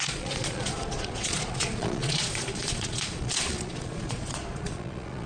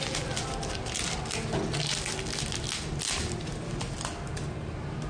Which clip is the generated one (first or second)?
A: first